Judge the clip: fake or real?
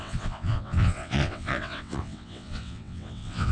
fake